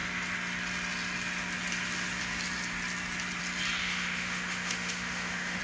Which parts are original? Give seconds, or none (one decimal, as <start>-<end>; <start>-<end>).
0.0-3.8